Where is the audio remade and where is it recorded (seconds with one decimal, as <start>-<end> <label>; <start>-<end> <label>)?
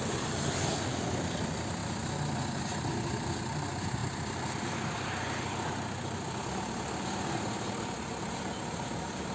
0.0-9.3 remade